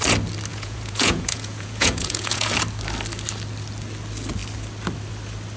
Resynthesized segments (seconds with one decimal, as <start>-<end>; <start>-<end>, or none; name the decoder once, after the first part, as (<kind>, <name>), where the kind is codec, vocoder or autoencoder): 0.5-2.5 (vocoder, Vocos)